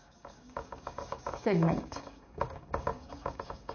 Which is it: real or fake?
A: fake